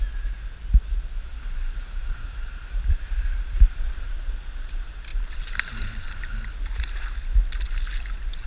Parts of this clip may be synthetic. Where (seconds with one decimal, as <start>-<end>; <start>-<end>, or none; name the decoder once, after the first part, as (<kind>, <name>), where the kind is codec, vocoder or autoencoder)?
2.0-4.1 (vocoder, BigVGAN v2); 5.1-7.1